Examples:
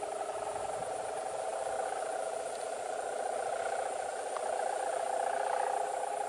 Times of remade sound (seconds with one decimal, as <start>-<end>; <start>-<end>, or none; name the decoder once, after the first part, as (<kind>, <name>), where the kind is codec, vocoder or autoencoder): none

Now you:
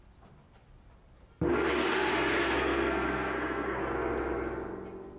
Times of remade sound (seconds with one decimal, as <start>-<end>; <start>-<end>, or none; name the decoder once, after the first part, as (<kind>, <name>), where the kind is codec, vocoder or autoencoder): 2.1-3.8 (codec, SNAC)

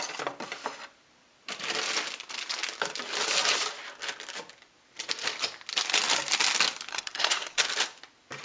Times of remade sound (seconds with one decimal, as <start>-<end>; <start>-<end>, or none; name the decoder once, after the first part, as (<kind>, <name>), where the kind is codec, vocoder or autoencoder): 6.9-7.6 (codec, SNAC)